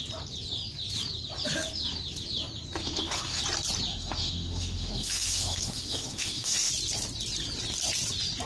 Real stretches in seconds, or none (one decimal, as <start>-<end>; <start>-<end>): 0.0-2.8; 3.4-3.9; 6.7-8.5